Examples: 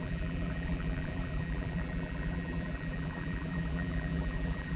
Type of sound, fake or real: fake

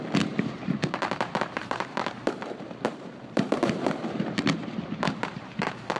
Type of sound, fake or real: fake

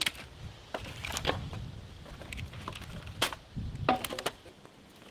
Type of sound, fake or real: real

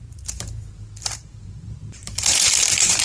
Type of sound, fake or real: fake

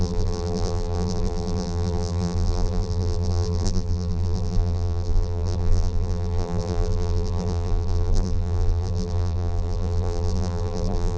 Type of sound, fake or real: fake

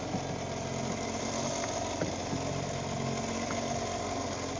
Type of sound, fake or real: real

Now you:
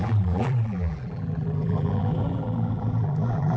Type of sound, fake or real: fake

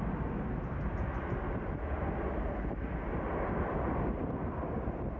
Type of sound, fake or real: real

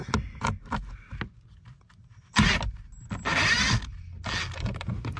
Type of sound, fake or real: real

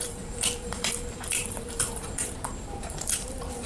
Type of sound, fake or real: fake